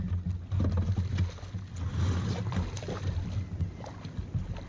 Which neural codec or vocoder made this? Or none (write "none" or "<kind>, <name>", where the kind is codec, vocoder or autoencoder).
none